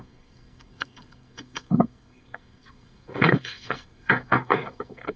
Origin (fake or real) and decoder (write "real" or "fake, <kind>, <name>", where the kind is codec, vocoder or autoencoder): fake, codec, SNAC